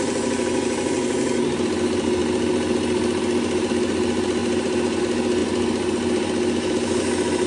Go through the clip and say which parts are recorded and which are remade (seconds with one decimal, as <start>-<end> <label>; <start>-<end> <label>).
0.0-4.4 recorded; 4.4-5.0 remade; 5.0-7.5 recorded